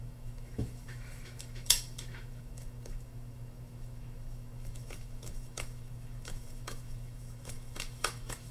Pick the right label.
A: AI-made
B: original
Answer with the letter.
A